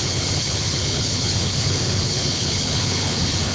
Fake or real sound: fake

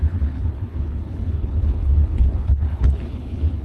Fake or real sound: fake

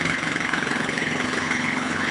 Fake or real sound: fake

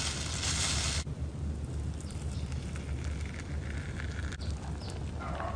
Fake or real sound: real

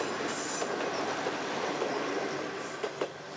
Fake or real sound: real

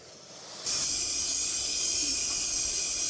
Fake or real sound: real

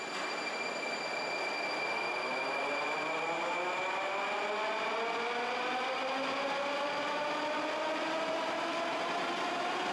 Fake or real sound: real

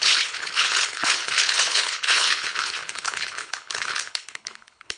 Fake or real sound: fake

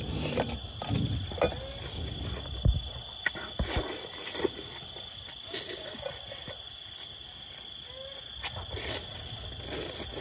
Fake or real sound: real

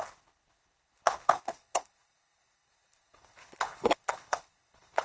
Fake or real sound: fake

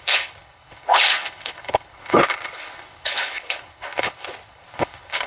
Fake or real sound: fake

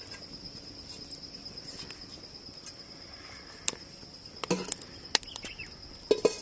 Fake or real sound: real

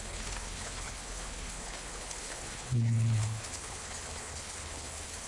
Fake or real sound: fake